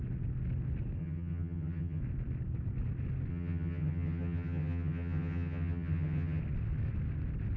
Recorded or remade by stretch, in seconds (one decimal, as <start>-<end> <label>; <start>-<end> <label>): 0.0-1.0 recorded; 1.0-2.0 remade; 2.0-3.3 recorded; 3.3-6.4 remade; 6.4-7.6 recorded